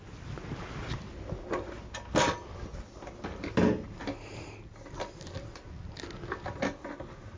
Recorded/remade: recorded